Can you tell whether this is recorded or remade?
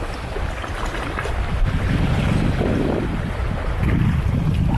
recorded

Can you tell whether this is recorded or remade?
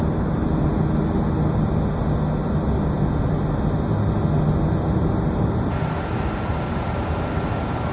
recorded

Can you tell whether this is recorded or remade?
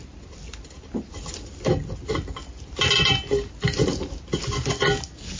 recorded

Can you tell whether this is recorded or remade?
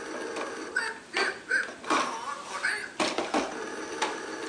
recorded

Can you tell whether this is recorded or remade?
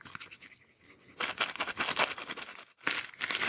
recorded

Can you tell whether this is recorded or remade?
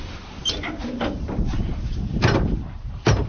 remade